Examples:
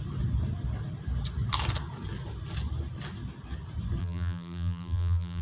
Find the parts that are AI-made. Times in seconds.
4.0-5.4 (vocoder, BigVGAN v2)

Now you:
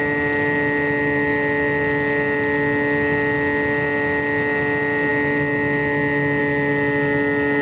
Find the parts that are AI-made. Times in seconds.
none

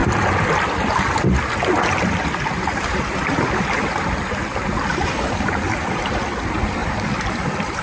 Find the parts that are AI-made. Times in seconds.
0.0-7.8 (vocoder, BigVGAN v2)

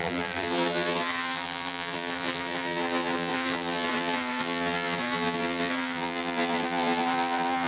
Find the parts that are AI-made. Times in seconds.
0.0-7.7 (vocoder, BigVGAN v2)

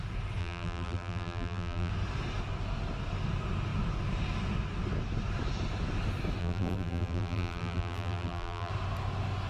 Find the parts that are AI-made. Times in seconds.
0.4-1.9 (vocoder, BigVGAN v2); 6.4-8.7